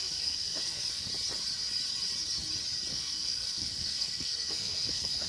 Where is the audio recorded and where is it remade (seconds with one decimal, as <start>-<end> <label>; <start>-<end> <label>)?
0.0-1.1 remade; 1.1-2.9 recorded; 2.9-5.3 remade